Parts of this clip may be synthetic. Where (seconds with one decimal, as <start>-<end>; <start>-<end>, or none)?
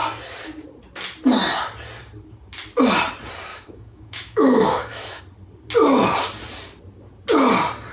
3.5-5.2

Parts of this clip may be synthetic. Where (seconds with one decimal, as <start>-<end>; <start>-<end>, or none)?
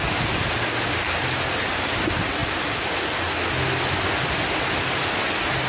none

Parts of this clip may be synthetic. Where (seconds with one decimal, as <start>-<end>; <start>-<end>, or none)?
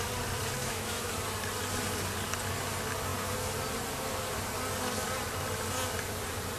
0.6-1.1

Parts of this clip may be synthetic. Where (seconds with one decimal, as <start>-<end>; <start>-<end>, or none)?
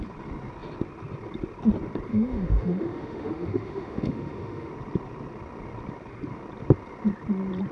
2.1-4.7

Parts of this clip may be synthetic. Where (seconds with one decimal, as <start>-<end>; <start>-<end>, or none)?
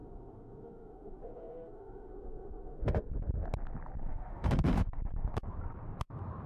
0.0-3.0; 4.1-5.0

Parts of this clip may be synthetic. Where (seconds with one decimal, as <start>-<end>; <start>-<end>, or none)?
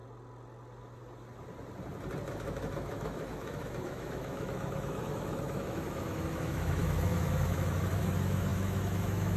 2.3-9.4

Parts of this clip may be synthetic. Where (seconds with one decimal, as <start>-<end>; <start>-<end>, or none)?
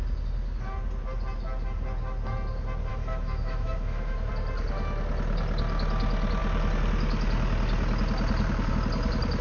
2.9-4.3